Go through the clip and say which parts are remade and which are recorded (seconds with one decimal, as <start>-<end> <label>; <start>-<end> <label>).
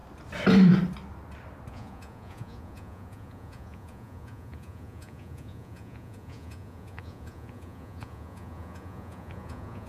0.0-1.7 recorded; 1.7-9.9 remade